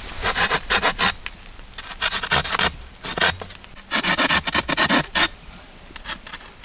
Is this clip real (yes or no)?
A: yes